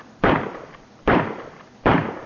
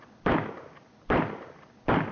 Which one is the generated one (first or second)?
first